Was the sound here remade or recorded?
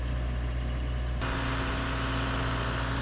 recorded